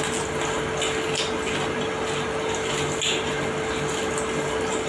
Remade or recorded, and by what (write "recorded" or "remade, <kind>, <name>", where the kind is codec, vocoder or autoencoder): recorded